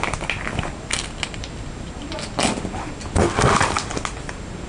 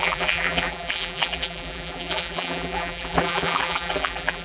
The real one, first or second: first